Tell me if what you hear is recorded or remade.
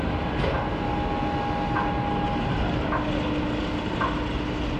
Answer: recorded